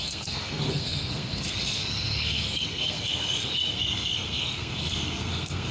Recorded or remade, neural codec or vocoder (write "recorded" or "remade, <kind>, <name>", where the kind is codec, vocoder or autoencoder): remade, codec, SNAC